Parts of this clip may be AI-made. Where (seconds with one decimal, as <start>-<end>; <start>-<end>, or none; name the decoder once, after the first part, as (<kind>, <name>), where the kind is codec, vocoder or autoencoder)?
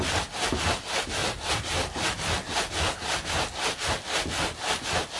none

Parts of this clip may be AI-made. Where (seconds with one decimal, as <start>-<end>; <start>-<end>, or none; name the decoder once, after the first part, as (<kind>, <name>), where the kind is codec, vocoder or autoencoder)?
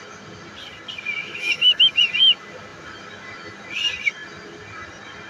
1.2-2.0 (autoencoder, DAC-VAE)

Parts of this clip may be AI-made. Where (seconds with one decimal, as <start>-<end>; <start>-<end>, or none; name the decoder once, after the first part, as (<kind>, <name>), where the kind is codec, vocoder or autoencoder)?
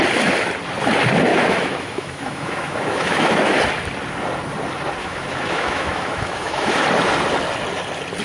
1.3-3.6 (autoencoder, DAC-VAE); 5.0-6.8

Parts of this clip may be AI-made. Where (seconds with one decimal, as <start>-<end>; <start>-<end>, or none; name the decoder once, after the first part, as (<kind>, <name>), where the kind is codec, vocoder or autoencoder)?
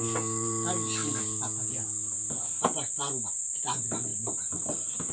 none